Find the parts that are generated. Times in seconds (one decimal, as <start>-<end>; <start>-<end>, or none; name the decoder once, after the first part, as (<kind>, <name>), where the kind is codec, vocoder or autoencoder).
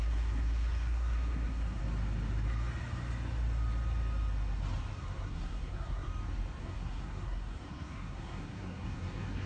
0.0-1.8 (codec, SNAC); 5.0-6.1; 6.6-9.5